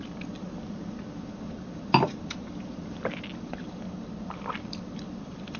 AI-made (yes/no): yes